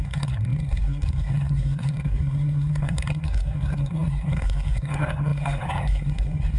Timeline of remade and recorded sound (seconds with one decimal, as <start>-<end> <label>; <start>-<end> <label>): 0.0-6.6 remade